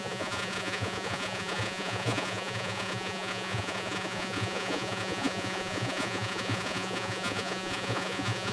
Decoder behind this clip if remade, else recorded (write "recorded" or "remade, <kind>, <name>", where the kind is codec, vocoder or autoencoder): remade, vocoder, Vocos